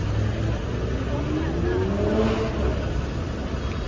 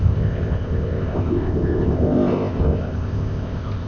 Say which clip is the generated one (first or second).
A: second